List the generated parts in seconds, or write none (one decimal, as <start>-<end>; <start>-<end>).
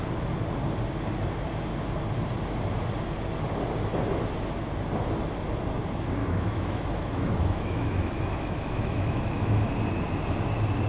6.2-9.7